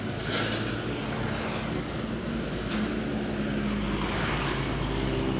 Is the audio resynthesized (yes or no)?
no